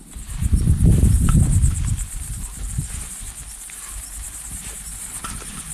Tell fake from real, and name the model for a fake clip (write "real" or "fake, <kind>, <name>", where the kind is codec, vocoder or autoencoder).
fake, vocoder, BigVGAN v2